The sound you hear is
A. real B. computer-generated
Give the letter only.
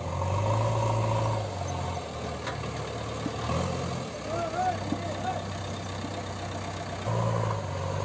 A